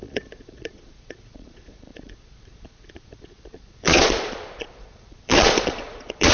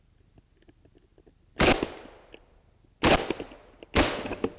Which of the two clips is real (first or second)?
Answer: second